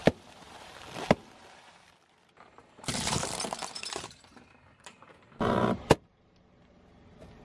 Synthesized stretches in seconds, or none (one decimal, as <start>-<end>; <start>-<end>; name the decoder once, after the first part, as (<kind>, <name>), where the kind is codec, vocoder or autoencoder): 0.0-0.7 (vocoder, BigVGAN v2); 2.6-6.9